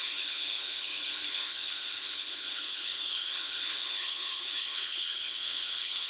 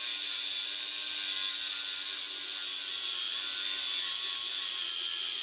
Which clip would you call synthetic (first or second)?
first